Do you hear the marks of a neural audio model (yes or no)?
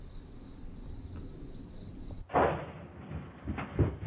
no